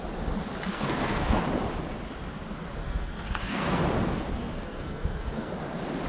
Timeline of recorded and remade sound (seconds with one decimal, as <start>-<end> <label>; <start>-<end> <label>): 0.0-0.7 recorded; 0.7-1.4 remade; 1.4-2.8 recorded; 2.8-3.8 remade; 3.8-4.4 recorded; 4.4-5.5 remade; 5.5-6.1 recorded